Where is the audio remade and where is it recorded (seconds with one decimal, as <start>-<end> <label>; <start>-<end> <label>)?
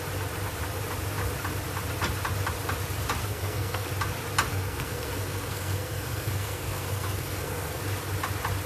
0.0-3.2 recorded; 3.2-3.9 remade; 3.9-4.5 recorded; 4.5-7.8 remade; 7.8-8.7 recorded